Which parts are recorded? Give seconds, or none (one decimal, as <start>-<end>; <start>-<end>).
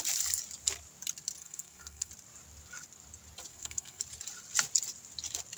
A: 0.0-1.4; 2.1-3.5; 4.0-5.6